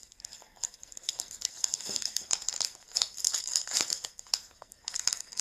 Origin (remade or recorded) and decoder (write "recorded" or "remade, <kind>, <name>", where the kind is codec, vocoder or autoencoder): remade, codec, SNAC